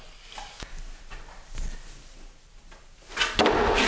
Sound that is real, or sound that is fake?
real